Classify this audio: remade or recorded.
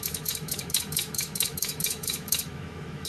remade